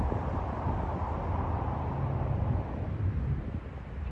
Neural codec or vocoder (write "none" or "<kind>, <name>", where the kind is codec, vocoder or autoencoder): none